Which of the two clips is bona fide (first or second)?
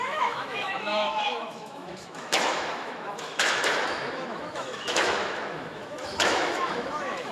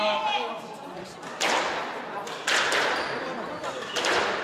second